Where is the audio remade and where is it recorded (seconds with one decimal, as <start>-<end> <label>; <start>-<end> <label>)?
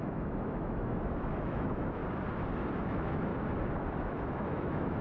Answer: 0.0-2.0 remade; 2.0-2.8 recorded; 2.8-3.3 remade; 3.3-4.0 recorded; 4.0-5.0 remade